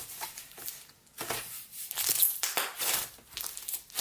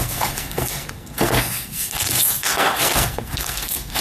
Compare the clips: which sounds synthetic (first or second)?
second